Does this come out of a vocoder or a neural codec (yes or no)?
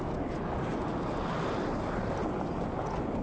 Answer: no